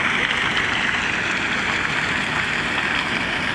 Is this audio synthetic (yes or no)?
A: no